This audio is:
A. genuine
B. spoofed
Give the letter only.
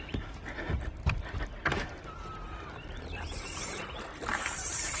B